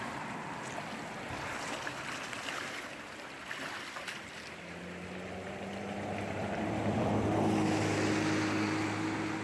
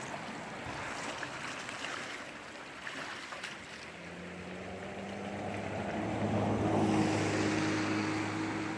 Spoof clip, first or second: first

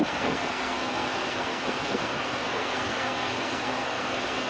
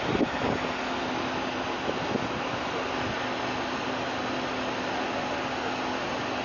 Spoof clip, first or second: first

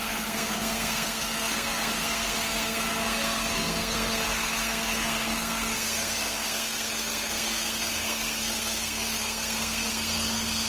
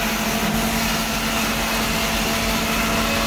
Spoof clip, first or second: first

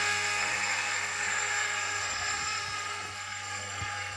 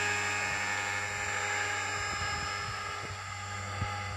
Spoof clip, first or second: first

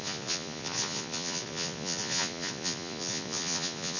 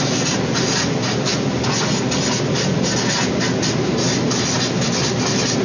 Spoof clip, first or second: first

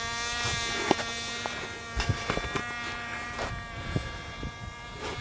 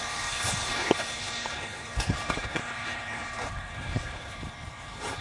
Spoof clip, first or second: second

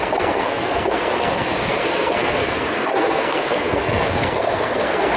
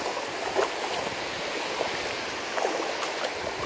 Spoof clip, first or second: first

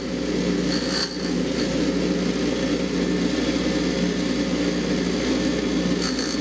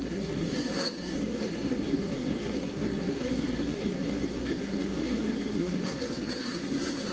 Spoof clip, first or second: second